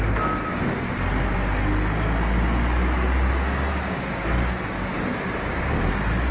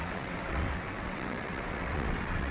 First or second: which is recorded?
first